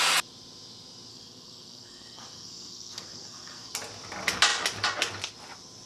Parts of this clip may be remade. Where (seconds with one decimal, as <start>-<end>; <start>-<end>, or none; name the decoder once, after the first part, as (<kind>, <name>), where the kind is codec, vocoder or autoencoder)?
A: 1.1-3.7 (codec, SNAC)